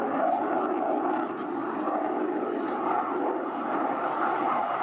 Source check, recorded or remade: recorded